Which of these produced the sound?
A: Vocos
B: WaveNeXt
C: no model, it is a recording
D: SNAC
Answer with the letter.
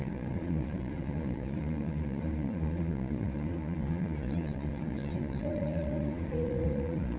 A